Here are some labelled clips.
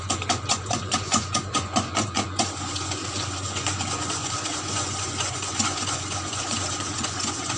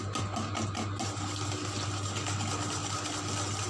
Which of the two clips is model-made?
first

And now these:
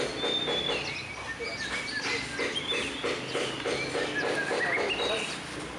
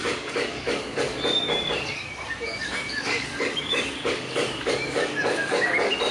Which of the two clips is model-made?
second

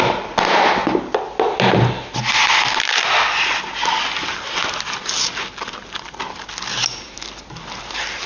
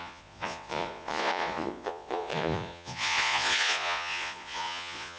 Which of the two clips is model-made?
second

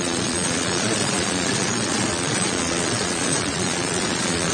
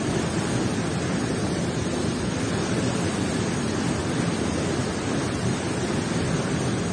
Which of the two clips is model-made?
first